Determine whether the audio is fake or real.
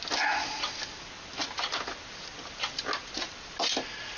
real